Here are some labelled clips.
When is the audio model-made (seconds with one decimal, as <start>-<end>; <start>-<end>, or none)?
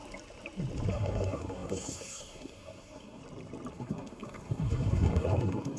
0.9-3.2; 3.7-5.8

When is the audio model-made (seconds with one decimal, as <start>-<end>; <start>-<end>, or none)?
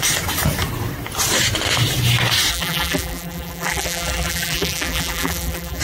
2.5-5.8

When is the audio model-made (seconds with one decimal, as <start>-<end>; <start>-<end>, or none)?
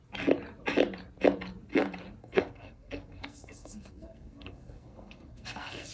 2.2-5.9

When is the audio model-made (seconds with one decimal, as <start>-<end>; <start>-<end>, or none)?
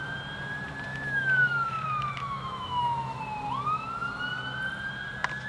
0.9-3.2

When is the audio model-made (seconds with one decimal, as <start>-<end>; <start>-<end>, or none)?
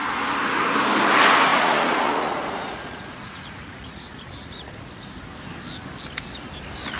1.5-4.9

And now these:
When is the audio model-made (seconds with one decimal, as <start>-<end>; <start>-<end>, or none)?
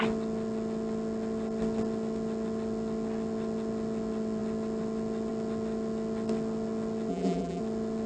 7.1-7.6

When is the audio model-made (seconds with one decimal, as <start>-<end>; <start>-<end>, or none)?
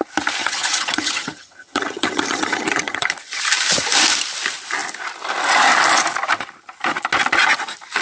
0.4-3.1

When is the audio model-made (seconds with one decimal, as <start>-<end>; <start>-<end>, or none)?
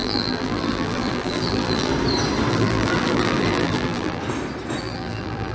0.0-1.9; 2.5-4.2; 4.8-5.5